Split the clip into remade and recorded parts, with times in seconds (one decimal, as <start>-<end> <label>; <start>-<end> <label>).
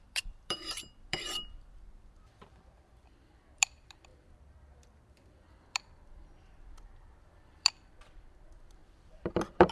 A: 0.0-9.7 remade